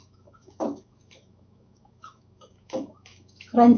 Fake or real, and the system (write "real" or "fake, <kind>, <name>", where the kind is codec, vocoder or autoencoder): fake, autoencoder, DAC-VAE